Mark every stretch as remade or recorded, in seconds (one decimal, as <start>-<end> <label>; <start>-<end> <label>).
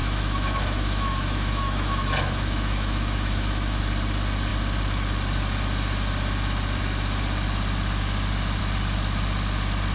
0.0-3.8 remade; 3.8-9.9 recorded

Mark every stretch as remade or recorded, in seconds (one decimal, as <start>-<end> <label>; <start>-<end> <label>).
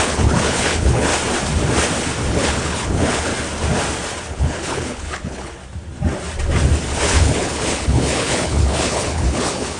0.0-1.1 remade; 1.1-2.3 recorded; 2.3-3.3 remade; 3.3-4.3 recorded; 4.3-5.6 remade; 5.6-7.0 recorded; 7.0-9.8 remade